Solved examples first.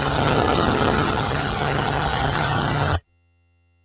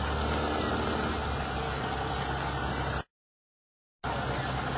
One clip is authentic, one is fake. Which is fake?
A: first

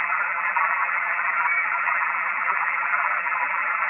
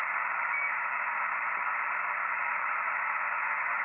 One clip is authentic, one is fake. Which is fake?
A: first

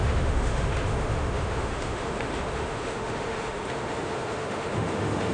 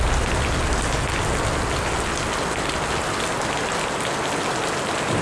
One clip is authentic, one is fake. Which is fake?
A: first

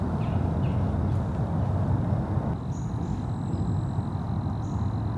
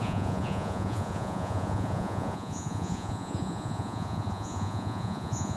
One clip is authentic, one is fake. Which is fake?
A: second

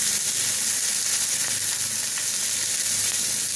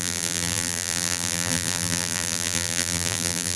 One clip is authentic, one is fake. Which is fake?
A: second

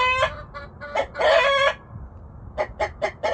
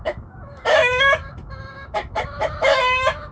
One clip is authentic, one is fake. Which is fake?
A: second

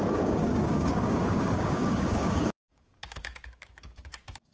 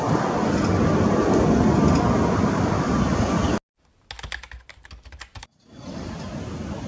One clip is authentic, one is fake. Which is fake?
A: first